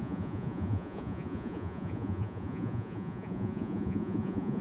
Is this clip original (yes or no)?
no